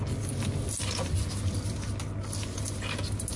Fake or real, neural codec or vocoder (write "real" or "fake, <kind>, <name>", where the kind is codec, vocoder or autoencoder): real